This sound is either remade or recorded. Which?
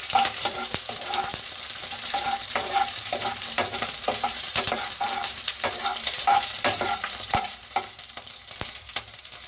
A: remade